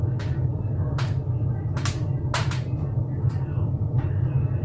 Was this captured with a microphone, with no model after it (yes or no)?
yes